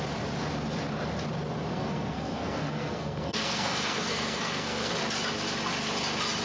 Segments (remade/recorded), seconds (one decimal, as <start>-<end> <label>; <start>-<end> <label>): 0.0-1.7 recorded; 1.7-4.9 remade; 4.9-6.4 recorded